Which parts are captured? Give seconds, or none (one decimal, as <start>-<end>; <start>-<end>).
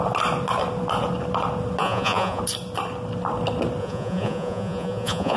0.0-1.8; 2.4-3.8